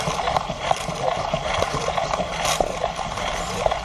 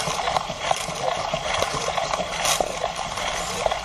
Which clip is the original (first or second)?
first